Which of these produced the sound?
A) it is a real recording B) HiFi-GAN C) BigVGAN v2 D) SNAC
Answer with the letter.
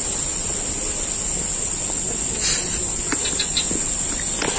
A